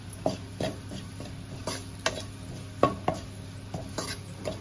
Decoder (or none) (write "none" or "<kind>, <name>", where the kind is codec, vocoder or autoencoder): none